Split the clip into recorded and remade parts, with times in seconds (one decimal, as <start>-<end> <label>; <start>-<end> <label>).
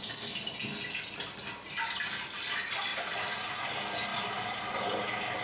0.0-2.9 recorded; 2.9-3.6 remade; 3.6-4.1 recorded; 4.1-5.0 remade; 5.0-5.4 recorded